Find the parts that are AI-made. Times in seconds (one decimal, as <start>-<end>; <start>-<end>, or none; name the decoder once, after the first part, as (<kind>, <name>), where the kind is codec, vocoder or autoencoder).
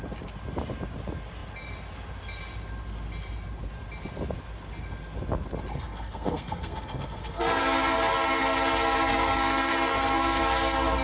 5.7-7.6 (codec, SNAC); 9.1-10.4